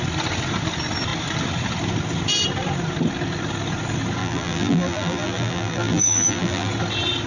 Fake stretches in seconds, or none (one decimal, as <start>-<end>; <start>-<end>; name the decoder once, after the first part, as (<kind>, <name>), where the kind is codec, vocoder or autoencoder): 4.2-6.7 (vocoder, BigVGAN v2)